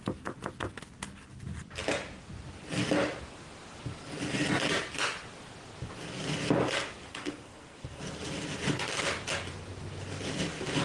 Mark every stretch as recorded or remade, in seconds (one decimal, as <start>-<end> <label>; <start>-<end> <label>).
0.0-7.1 recorded; 7.1-8.0 remade; 8.0-10.8 recorded